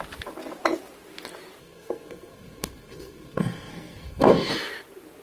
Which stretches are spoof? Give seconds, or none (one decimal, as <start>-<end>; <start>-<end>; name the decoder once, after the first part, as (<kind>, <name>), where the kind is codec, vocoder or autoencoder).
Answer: 1.6-4.5 (codec, SNAC)